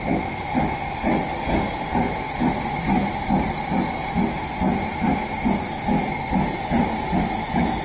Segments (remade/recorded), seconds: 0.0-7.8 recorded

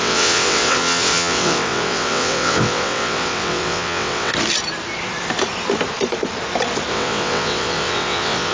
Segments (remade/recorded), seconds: 0.0-4.3 remade; 4.3-6.9 recorded; 6.9-8.5 remade